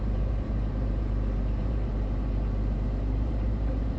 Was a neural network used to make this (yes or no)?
yes